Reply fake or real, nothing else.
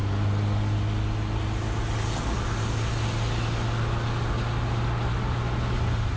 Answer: real